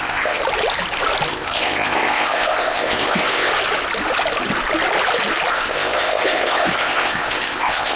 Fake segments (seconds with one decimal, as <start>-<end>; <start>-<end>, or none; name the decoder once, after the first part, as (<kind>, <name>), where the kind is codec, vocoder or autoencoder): 0.0-0.4 (codec, ZipCodec); 1.3-3.5; 5.5-8.0